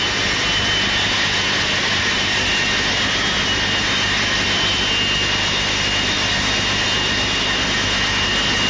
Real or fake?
real